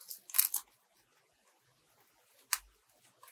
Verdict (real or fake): real